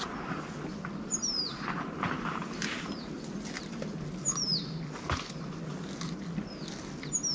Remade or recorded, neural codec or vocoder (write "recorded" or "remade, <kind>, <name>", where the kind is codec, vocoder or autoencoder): recorded